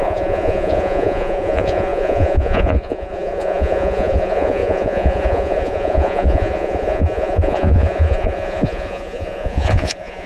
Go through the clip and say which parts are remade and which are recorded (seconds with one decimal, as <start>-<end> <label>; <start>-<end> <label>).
0.0-10.3 remade